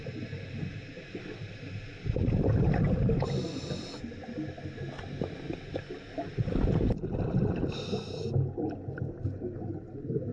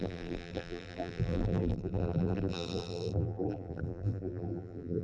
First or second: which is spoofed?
second